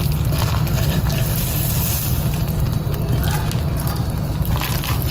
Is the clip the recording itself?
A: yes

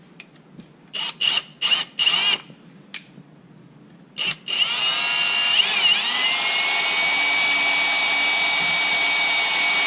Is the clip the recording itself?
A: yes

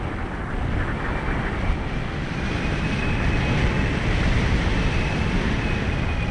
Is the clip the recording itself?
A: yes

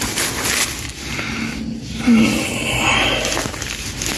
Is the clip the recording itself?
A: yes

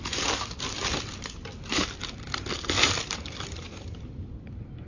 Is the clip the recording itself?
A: no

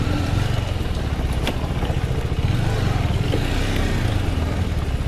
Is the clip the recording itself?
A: yes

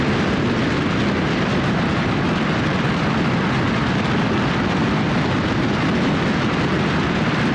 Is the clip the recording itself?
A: yes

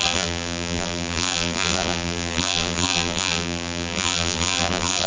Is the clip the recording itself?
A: no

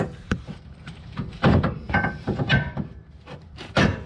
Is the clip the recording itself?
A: no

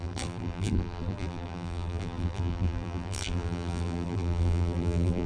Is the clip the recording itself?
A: no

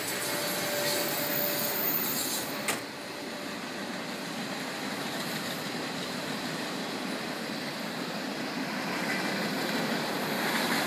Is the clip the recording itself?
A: yes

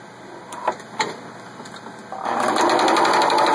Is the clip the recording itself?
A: yes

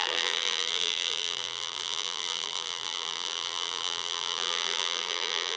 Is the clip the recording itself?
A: no